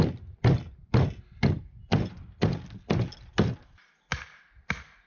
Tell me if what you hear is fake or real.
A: real